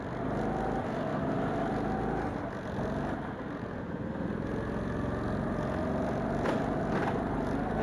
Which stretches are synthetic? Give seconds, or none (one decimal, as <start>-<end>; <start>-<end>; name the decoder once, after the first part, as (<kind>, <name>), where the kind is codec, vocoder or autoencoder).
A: none